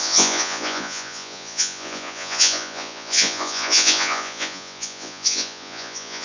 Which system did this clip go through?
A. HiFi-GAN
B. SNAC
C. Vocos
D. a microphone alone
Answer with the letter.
C